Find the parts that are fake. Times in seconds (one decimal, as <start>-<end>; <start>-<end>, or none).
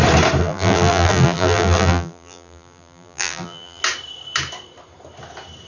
0.4-3.8